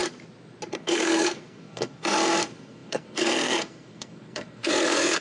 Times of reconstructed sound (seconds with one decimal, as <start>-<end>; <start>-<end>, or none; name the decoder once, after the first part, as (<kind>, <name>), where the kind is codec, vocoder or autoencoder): 0.7-5.2 (codec, SNAC)